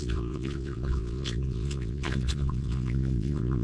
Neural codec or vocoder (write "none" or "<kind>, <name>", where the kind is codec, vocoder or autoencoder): vocoder, Vocos